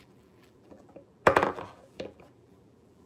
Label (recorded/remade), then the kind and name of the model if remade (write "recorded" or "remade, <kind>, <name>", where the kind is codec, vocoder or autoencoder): remade, vocoder, BigVGAN v2